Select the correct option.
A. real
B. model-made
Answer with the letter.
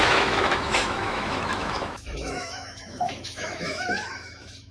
B